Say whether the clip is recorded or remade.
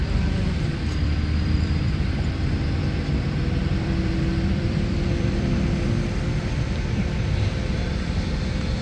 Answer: remade